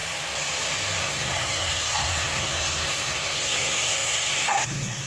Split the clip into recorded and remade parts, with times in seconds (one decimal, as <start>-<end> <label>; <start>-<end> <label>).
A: 0.0-1.0 recorded; 1.0-5.1 remade